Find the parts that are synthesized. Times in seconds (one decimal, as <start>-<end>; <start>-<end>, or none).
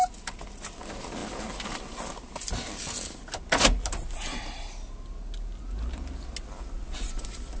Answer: none